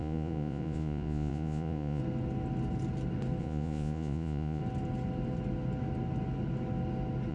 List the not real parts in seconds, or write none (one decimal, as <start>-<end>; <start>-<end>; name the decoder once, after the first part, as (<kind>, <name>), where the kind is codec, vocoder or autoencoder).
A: 0.0-2.0 (vocoder, Vocos); 3.4-4.6